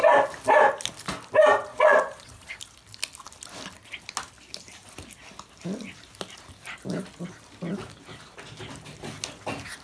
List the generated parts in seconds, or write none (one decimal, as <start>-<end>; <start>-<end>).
1.7-2.6